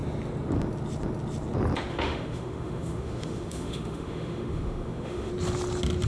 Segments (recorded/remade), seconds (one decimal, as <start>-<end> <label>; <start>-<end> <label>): 0.0-1.9 recorded; 1.9-5.3 remade; 5.3-6.1 recorded